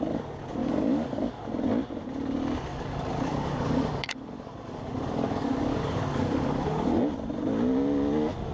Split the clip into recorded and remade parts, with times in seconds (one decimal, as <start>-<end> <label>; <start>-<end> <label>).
0.0-0.6 recorded; 0.6-1.7 remade; 1.7-2.7 recorded; 2.7-7.0 remade; 7.0-8.5 recorded